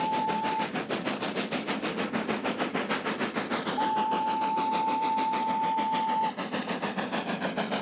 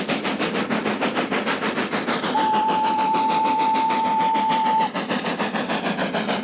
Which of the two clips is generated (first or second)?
second